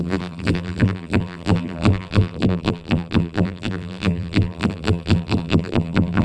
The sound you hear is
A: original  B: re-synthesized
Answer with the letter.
B